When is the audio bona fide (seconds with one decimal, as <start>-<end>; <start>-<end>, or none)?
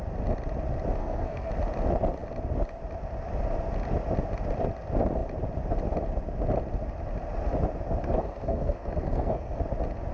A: 0.0-1.0; 1.5-8.0; 9.6-10.1